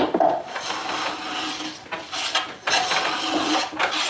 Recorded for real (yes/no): yes